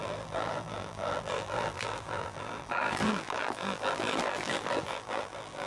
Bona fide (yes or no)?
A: no